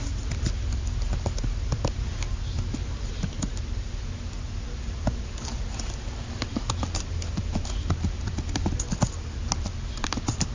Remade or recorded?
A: recorded